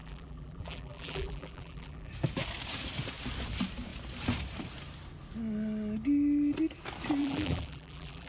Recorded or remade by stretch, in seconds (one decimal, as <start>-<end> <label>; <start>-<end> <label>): 0.0-2.1 remade; 2.1-7.2 recorded; 7.2-8.3 remade

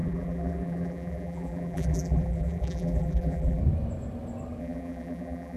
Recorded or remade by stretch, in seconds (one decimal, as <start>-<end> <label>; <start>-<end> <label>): 0.0-3.6 remade; 3.6-4.6 recorded; 4.6-5.6 remade

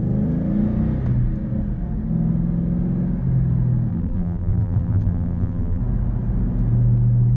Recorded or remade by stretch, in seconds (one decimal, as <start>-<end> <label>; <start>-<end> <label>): 0.0-3.9 recorded; 3.9-5.8 remade; 5.8-7.4 recorded

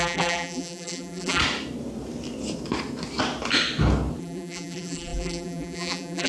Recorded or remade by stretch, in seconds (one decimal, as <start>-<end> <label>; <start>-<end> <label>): 0.0-1.4 remade; 1.4-4.2 recorded; 4.2-6.3 remade

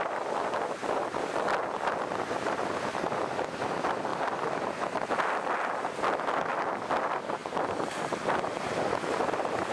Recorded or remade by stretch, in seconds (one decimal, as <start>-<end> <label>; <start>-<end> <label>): 0.0-0.8 recorded; 0.8-2.6 remade; 2.6-9.7 recorded

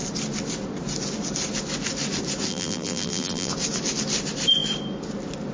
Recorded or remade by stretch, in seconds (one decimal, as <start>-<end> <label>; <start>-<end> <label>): 0.0-2.5 recorded; 2.5-3.5 remade; 3.5-5.5 recorded